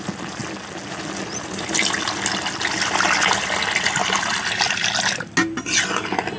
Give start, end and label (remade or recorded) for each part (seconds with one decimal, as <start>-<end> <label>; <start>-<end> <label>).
0.0-6.4 recorded